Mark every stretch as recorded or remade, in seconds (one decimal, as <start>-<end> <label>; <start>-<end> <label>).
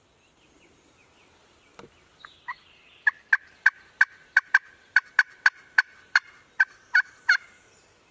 0.0-1.7 remade; 1.7-4.7 recorded; 4.7-8.1 remade